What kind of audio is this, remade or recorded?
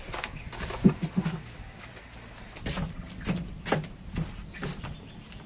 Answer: recorded